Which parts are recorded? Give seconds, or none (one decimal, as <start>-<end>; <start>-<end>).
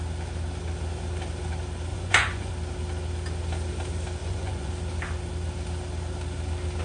0.0-1.9; 2.5-4.2; 4.7-6.8